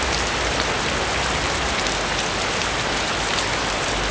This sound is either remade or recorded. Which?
recorded